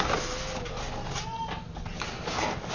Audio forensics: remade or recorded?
recorded